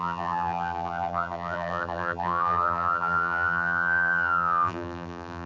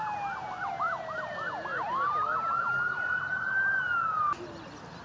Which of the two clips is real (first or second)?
second